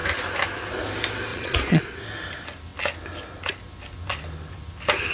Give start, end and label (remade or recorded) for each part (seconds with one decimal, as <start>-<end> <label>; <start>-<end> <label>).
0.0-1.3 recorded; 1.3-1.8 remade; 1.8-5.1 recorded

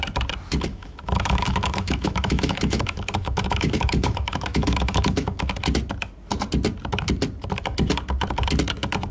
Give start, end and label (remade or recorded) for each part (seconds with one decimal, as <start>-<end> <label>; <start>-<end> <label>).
0.0-0.7 recorded; 0.7-5.5 remade; 5.5-9.1 recorded

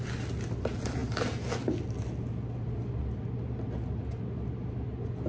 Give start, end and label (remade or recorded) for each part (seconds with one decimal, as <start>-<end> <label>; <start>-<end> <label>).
0.0-5.3 recorded